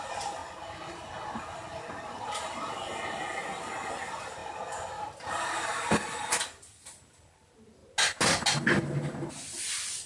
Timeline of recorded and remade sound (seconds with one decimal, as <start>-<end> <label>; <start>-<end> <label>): 0.0-10.1 recorded